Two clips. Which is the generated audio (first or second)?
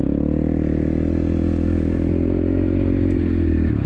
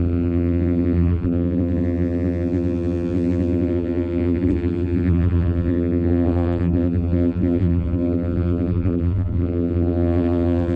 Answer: second